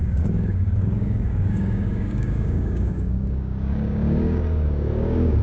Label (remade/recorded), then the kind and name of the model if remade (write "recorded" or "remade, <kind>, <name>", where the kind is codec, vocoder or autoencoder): remade, codec, DAC